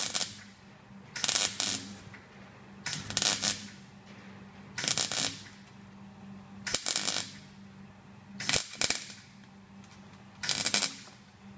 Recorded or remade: recorded